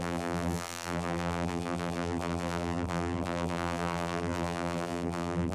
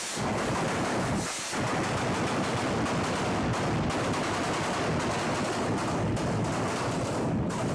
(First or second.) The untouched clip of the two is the second